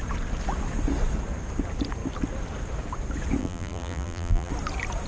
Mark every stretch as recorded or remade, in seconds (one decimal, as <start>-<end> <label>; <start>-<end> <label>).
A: 0.0-3.4 recorded; 3.4-4.5 remade; 4.5-5.1 recorded